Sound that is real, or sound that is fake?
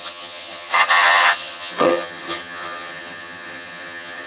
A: fake